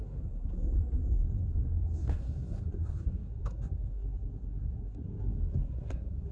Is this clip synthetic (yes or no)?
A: yes